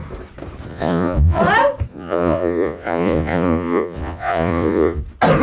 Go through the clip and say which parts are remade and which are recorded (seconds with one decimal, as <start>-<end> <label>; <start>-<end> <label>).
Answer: 0.0-0.7 recorded; 0.7-1.4 remade; 1.4-1.9 recorded; 1.9-5.0 remade; 5.0-5.4 recorded